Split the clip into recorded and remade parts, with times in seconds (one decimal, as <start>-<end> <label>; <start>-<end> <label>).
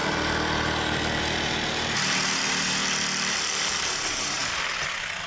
0.0-1.2 recorded; 1.2-2.8 remade; 2.8-3.8 recorded; 3.8-4.4 remade; 4.4-5.3 recorded